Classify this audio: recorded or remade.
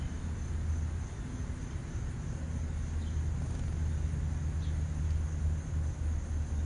recorded